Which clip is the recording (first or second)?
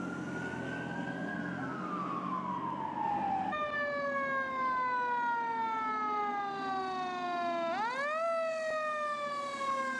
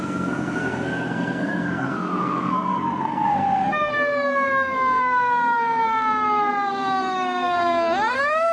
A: first